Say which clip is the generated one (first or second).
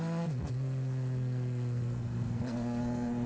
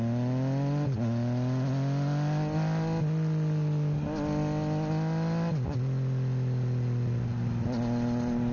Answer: first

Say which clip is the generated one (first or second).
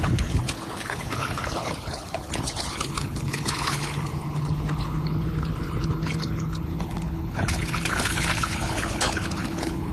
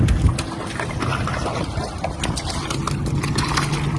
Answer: first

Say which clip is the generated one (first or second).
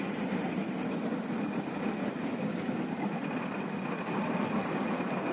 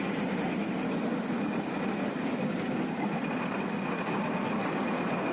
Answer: first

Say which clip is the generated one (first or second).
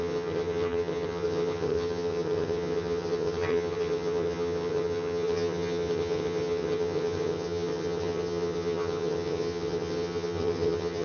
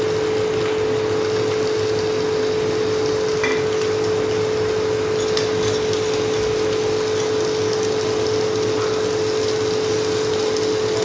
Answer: first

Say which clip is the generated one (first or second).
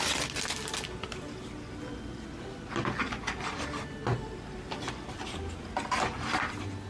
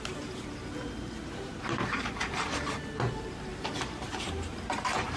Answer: second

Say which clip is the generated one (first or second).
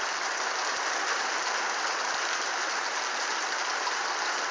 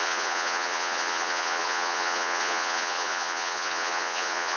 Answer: second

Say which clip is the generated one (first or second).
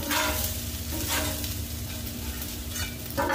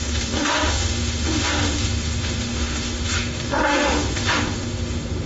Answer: second